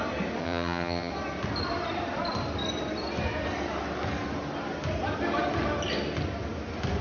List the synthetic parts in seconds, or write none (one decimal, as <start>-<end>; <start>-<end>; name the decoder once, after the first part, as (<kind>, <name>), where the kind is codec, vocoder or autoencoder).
0.4-1.1 (vocoder, HiFi-GAN)